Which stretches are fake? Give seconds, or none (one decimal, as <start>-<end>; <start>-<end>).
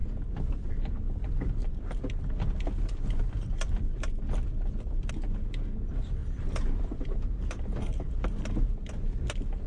6.2-8.9